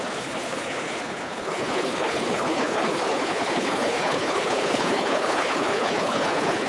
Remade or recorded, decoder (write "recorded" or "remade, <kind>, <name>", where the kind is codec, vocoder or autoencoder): remade, codec, HILCodec